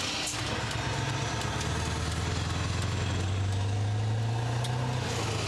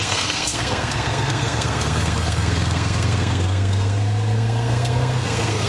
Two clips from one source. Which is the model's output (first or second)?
second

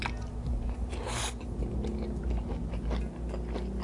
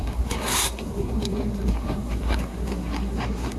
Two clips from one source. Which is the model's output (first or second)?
second